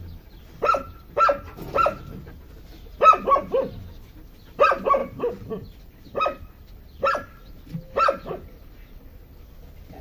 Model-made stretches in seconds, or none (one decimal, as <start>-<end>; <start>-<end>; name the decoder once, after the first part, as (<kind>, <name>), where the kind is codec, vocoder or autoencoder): 5.0-9.1 (vocoder, BigVGAN v2)